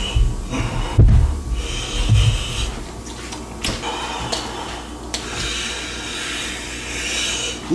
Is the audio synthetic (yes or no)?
no